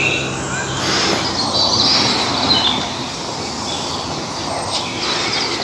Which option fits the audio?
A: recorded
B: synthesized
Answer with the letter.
A